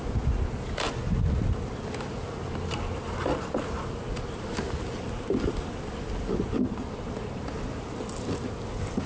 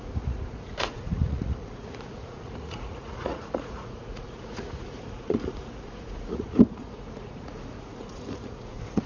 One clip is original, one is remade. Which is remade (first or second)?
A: second